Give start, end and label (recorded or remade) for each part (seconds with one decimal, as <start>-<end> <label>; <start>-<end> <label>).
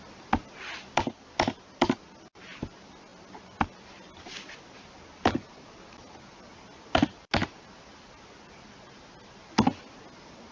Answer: 0.0-10.5 recorded